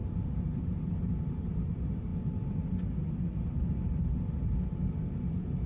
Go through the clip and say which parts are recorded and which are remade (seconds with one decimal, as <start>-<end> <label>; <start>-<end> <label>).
0.0-5.7 recorded